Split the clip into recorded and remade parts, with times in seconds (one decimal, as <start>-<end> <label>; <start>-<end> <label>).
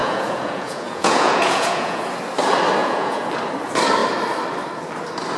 0.0-2.0 remade; 2.0-2.8 recorded; 2.8-3.3 remade; 3.3-5.4 recorded